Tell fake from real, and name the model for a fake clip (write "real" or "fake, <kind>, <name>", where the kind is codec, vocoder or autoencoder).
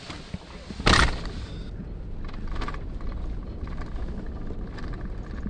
real